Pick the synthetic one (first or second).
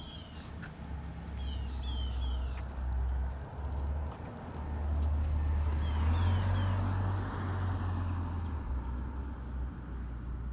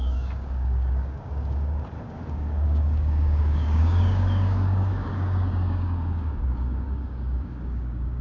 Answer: second